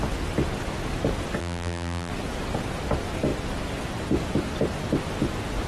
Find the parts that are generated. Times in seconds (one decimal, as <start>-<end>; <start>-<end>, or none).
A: 1.4-2.1